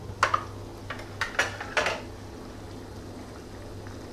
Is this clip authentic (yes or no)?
yes